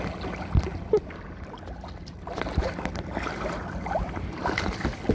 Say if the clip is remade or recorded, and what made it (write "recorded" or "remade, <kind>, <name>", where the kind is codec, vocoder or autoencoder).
recorded